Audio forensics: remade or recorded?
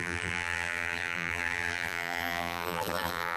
remade